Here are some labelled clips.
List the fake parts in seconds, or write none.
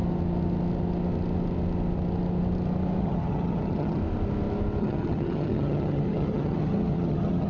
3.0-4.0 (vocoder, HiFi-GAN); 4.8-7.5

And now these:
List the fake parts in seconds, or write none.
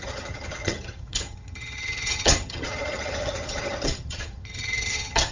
0.0-5.3 (vocoder, HiFi-GAN)